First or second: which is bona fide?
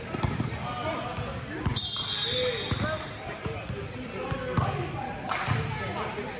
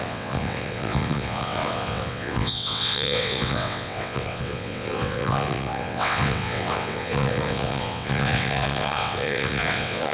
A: first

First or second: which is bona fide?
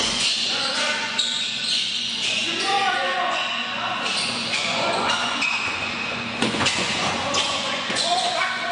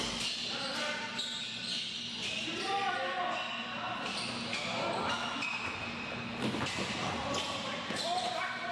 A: second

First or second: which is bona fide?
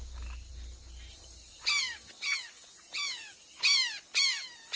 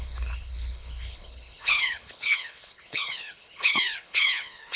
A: first